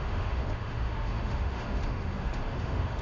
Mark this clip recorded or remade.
remade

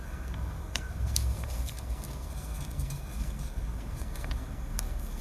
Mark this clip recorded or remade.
remade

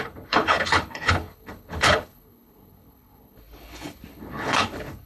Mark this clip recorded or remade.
remade